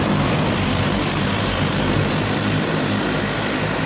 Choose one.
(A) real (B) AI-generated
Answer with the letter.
A